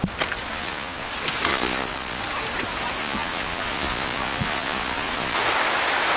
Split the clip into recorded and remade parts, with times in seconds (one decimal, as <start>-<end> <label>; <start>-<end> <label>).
0.0-0.5 recorded; 0.5-1.1 remade; 1.1-1.5 recorded; 1.5-2.2 remade; 2.2-3.0 recorded; 3.0-5.4 remade; 5.4-6.2 recorded